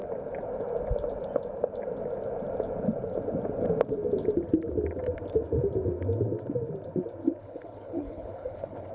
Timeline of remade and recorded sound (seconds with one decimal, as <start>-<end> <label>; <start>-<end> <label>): 0.0-7.4 recorded; 7.4-8.9 remade